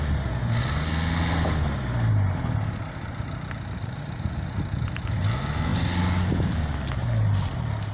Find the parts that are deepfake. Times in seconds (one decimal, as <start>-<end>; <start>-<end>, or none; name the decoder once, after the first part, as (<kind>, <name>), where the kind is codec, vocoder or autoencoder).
3.8-4.6 (vocoder, Vocos)